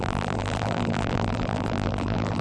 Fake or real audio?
fake